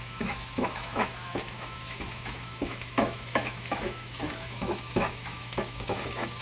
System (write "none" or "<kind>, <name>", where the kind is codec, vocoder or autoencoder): autoencoder, DAC-VAE